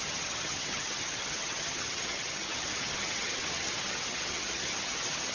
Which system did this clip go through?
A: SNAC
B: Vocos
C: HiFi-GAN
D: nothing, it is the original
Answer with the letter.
C